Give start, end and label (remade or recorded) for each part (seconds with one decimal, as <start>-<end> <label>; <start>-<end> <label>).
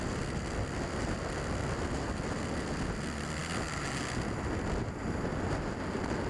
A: 0.0-6.3 recorded